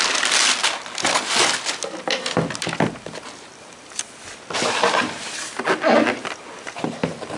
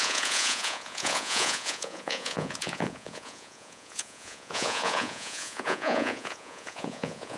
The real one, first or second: first